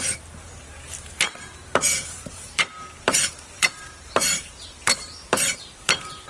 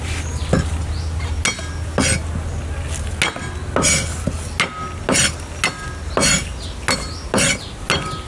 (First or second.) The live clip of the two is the second